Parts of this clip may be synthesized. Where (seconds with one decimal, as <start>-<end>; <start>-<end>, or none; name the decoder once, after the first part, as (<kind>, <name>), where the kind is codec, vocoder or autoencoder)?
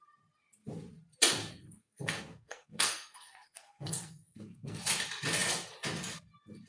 1.4-4.8 (codec, SNAC)